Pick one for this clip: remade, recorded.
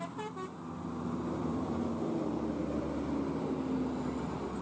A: recorded